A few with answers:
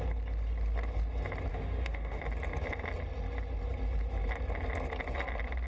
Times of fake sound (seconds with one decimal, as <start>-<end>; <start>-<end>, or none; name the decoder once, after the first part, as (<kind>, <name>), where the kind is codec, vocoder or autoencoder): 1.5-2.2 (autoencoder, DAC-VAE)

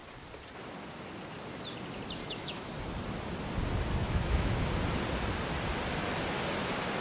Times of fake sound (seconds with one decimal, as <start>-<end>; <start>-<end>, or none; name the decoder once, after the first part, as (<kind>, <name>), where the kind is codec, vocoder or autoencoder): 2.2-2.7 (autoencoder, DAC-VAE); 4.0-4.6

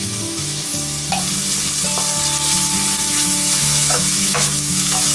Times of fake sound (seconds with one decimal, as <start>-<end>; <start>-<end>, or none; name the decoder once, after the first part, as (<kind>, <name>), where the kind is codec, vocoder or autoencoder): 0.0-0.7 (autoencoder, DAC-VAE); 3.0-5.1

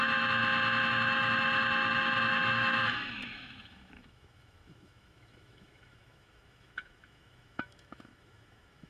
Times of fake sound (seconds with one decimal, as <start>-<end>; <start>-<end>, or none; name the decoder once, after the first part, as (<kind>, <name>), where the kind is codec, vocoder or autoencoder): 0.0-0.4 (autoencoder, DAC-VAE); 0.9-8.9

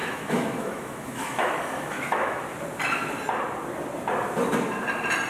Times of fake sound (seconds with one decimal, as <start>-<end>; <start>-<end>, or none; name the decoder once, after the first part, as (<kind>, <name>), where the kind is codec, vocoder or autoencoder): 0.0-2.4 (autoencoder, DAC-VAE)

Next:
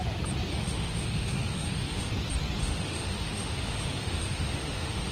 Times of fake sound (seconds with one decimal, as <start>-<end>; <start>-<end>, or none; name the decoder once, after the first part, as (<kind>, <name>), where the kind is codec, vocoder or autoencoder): 0.5-2.1 (autoencoder, DAC-VAE); 2.6-5.1